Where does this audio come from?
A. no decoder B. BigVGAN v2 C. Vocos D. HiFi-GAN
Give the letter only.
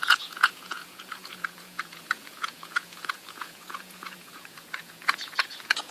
C